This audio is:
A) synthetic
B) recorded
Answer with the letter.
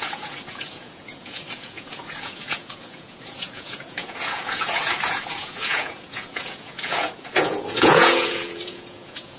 A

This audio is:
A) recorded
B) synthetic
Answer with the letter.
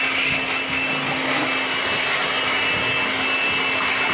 A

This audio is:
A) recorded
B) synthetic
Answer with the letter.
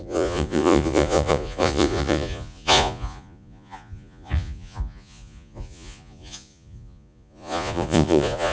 B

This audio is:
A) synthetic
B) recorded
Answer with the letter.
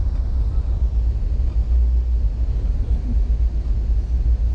B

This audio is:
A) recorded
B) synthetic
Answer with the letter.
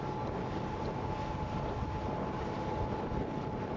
A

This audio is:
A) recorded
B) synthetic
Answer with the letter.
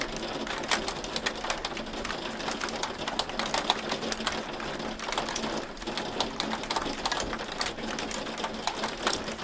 A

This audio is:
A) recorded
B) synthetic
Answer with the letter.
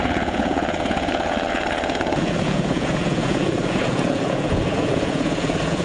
B